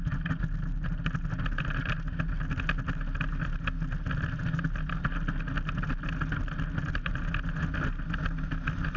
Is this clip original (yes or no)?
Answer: yes